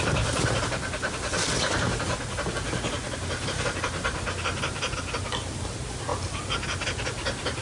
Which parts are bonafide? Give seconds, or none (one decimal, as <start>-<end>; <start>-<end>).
0.0-7.6